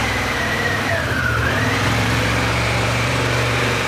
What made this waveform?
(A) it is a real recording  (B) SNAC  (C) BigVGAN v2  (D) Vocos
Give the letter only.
C